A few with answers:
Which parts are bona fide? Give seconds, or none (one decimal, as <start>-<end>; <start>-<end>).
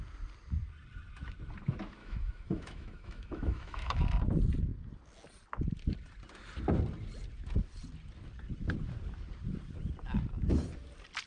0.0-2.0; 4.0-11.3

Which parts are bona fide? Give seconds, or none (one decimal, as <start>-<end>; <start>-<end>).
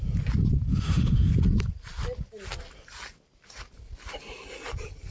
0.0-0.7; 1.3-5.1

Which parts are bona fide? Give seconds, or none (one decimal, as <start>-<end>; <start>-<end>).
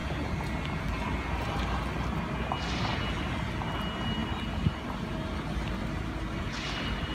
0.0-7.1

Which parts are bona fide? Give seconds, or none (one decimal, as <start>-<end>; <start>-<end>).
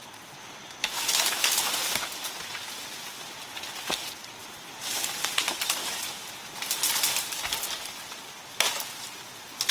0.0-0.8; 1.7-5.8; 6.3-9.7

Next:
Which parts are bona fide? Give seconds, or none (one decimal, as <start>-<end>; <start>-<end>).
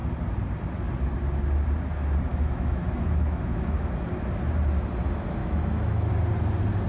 0.0-2.3; 3.9-5.4; 6.1-6.9